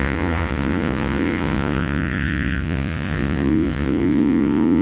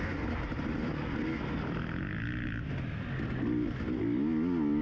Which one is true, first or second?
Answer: second